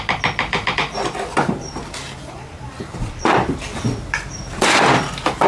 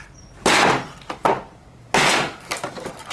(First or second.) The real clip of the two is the second